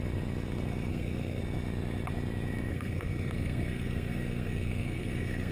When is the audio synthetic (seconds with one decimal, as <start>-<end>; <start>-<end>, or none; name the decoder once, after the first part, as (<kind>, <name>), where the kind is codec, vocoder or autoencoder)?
0.9-1.4 (codec, SNAC); 2.7-5.5